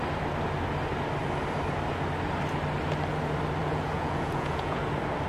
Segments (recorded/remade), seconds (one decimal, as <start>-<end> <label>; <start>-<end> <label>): 0.0-3.6 recorded; 3.6-4.8 remade; 4.8-5.3 recorded